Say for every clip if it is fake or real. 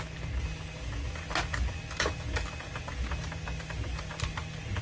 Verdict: real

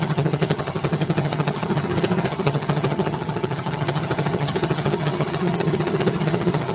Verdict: fake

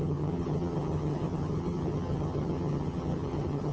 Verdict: fake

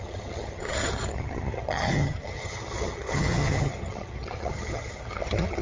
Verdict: fake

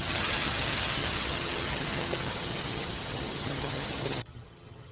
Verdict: fake